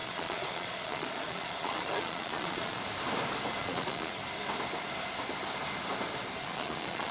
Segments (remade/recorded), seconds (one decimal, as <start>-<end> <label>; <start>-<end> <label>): 0.0-2.8 remade; 2.8-3.6 recorded; 3.6-4.2 remade; 4.2-6.4 recorded; 6.4-7.1 remade

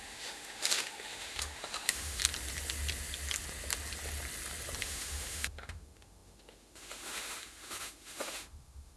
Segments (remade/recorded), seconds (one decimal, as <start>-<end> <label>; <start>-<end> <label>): 0.0-2.2 remade; 2.2-4.8 recorded; 4.8-9.0 remade

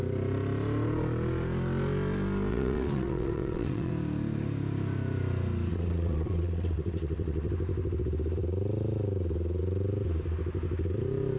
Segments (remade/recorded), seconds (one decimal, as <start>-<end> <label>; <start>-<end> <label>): 0.0-2.5 recorded; 2.5-3.9 remade; 3.9-5.7 recorded; 5.7-7.5 remade; 7.5-11.4 recorded

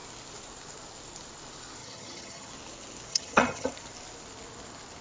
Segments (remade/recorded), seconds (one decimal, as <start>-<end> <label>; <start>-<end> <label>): 0.0-1.8 recorded; 1.8-2.5 remade; 2.5-3.1 recorded; 3.1-3.7 remade; 3.7-5.0 recorded

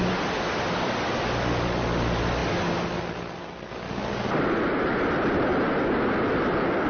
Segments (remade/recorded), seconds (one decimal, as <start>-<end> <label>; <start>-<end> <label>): 0.0-6.9 recorded